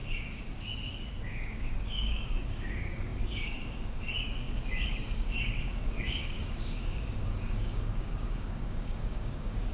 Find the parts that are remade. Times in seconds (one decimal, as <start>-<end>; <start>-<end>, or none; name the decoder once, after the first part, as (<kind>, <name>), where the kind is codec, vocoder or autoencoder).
0.0-9.7 (codec, DAC)